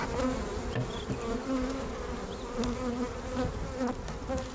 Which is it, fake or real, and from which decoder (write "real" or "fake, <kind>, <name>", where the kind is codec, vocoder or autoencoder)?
real